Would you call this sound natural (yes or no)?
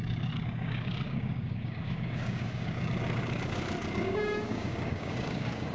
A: no